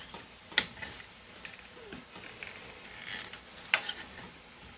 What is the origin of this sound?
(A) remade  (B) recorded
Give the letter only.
B